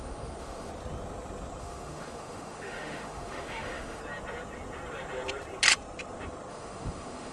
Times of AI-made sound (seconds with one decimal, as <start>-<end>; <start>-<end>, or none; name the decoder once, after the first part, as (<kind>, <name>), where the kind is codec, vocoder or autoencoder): 0.0-0.7 (autoencoder, DAC-VAE); 1.6-4.0; 6.5-7.3